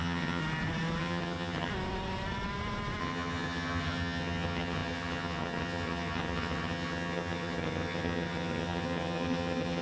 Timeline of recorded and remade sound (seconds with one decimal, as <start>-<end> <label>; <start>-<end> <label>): 0.0-0.4 remade; 0.4-1.0 recorded; 1.0-1.7 remade; 1.7-3.0 recorded; 3.0-9.8 remade